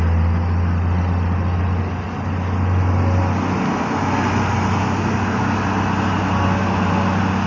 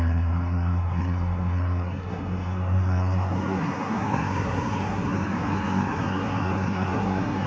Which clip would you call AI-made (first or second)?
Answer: second